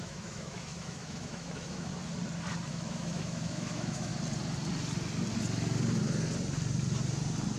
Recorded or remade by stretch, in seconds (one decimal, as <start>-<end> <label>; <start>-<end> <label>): 0.0-1.9 remade; 1.9-2.7 recorded; 2.7-4.1 remade; 4.1-7.6 recorded

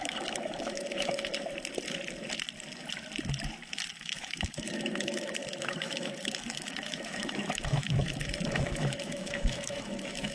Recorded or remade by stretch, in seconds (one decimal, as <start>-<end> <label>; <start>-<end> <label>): 0.0-1.3 remade; 1.3-3.9 recorded; 3.9-10.3 remade

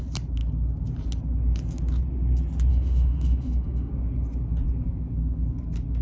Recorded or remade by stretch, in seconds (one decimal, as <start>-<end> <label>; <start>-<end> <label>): 0.0-2.7 recorded; 2.7-3.9 remade; 3.9-6.0 recorded

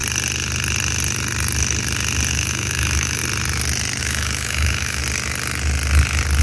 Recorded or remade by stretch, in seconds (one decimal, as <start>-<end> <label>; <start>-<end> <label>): 0.0-2.3 recorded; 2.3-3.2 remade; 3.2-4.0 recorded; 4.0-5.0 remade; 5.0-6.4 recorded

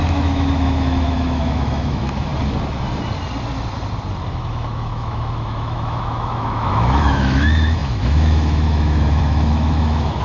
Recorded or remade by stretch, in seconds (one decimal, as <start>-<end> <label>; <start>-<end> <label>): 0.0-2.3 remade; 2.3-4.3 recorded; 4.3-10.2 remade

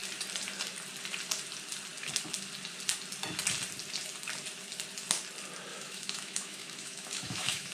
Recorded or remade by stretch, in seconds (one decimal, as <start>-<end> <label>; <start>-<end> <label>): 0.0-5.7 recorded; 5.7-7.7 remade